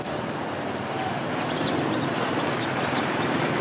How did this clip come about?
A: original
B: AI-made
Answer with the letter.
A